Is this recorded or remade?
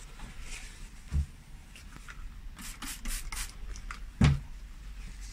recorded